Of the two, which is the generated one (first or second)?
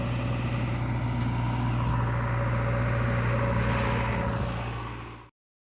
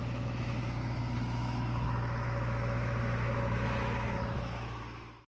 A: second